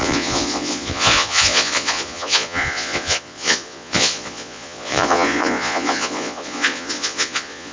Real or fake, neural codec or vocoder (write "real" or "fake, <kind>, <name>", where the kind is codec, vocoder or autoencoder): fake, vocoder, Vocos